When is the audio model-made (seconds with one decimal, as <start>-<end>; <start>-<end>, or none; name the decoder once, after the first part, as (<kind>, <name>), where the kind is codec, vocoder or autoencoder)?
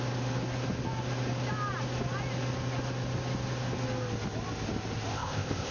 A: 5.1-5.7 (codec, ZipCodec)